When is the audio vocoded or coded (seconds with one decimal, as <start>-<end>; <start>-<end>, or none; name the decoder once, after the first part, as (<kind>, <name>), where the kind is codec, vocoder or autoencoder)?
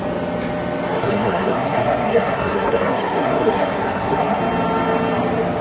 1.0-4.4 (codec, SNAC)